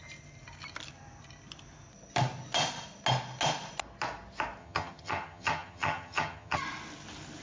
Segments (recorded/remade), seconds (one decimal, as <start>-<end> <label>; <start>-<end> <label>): 0.0-4.6 recorded; 4.6-6.6 remade; 6.6-7.4 recorded